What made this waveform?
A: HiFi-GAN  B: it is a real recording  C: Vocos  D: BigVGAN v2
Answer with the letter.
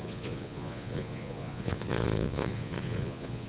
C